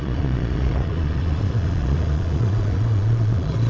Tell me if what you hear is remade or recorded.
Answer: remade